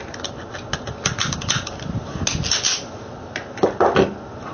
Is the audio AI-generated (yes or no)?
no